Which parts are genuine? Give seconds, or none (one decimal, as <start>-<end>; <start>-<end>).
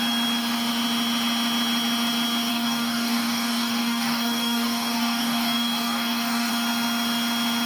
0.0-2.5; 6.5-7.7